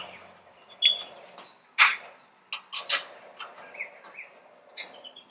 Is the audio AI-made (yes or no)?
no